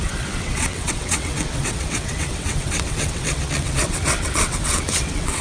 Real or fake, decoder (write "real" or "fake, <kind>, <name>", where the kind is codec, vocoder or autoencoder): fake, vocoder, WaveNeXt